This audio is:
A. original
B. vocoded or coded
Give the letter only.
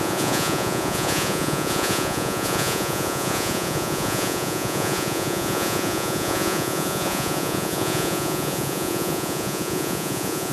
B